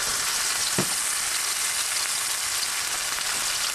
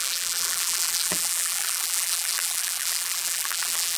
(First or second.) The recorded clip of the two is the first